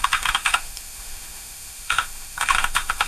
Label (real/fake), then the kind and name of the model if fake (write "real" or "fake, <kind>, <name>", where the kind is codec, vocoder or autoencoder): fake, autoencoder, DAC-VAE